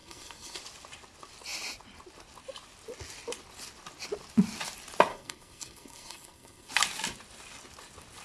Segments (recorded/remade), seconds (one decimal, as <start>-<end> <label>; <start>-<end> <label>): 0.0-0.6 remade; 0.6-5.1 recorded; 5.1-6.7 remade; 6.7-8.2 recorded